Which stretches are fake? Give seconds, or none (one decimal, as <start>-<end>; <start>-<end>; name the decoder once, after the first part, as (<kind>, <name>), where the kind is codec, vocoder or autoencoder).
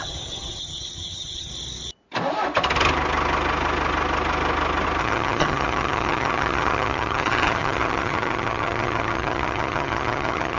0.0-1.5 (vocoder, HiFi-GAN); 5.0-10.6